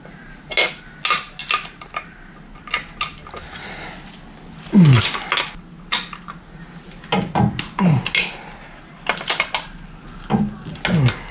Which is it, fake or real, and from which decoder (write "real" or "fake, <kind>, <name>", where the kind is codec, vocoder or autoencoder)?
real